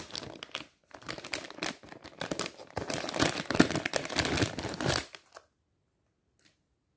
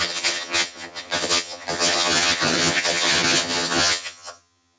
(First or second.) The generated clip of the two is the second